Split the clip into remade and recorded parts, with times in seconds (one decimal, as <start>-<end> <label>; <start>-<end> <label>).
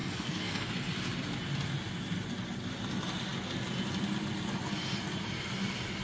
0.0-0.7 remade; 0.7-6.0 recorded